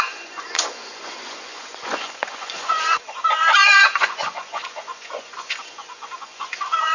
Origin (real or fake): fake